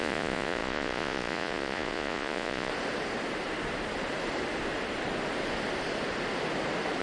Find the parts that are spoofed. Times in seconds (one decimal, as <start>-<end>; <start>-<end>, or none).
0.0-2.7